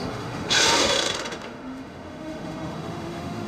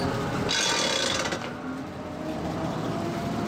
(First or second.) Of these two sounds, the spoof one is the first